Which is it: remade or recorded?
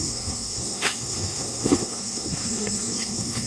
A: remade